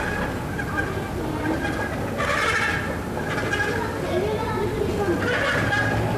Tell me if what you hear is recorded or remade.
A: recorded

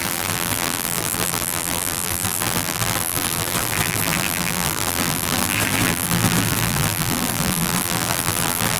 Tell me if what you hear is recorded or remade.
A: remade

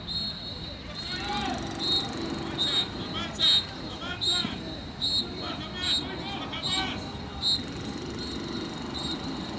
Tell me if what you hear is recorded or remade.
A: recorded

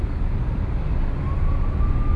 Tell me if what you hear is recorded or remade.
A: recorded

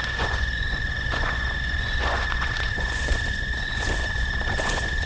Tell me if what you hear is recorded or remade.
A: remade